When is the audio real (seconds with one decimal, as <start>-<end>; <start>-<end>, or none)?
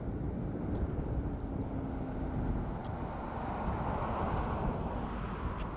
0.0-5.8